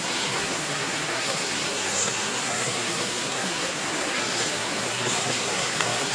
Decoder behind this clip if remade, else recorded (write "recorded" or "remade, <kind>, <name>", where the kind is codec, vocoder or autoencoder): remade, codec, SNAC